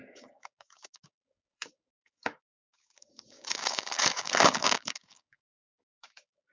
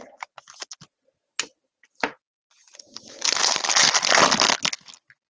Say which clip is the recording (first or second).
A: second